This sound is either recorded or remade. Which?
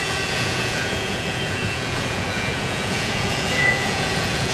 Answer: remade